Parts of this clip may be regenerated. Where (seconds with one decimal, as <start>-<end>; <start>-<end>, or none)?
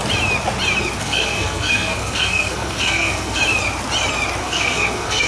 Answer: 1.0-3.4; 4.4-5.3